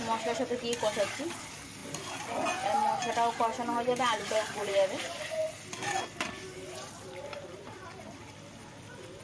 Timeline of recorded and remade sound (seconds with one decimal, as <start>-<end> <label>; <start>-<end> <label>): 0.0-3.5 recorded; 3.5-5.0 remade; 5.0-7.3 recorded; 7.3-7.9 remade; 7.9-9.2 recorded